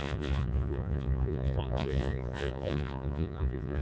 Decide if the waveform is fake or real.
fake